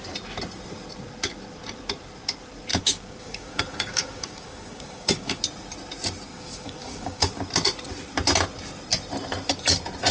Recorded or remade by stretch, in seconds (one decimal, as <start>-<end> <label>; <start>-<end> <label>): 0.0-2.7 recorded; 2.7-5.4 remade; 5.4-6.3 recorded; 6.3-7.3 remade; 7.3-10.1 recorded